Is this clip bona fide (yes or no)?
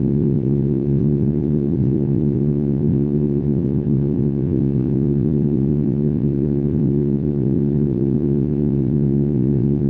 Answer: no